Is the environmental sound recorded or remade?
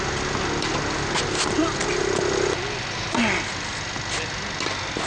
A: recorded